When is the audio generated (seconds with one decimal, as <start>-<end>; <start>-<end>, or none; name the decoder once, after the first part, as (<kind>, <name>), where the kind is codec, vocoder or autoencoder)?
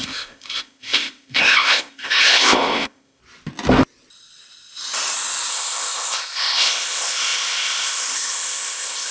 0.0-3.2 (codec, ZipCodec); 5.5-9.1